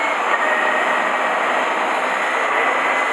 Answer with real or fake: real